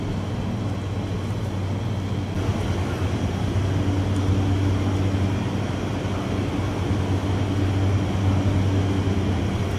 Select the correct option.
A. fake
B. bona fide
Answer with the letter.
B